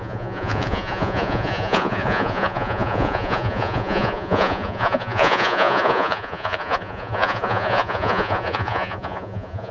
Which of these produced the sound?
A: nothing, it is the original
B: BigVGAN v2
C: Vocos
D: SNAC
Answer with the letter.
C